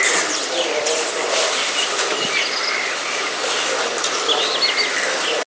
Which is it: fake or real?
real